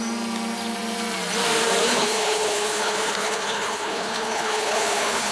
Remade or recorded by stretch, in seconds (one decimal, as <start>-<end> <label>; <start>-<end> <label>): 0.0-1.8 recorded; 1.8-5.3 remade